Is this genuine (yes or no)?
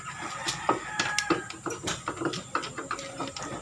yes